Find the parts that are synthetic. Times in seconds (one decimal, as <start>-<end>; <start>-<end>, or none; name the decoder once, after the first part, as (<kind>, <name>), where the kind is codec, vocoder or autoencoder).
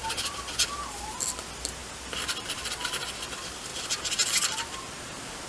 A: none